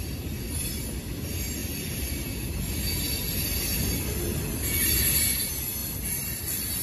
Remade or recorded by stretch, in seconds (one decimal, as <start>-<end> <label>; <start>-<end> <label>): 0.0-1.6 recorded; 1.6-2.5 remade; 2.5-5.8 recorded; 5.8-6.8 remade